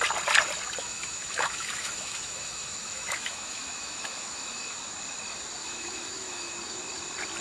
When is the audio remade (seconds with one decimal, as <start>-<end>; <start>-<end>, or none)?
0.8-4.7; 5.6-6.5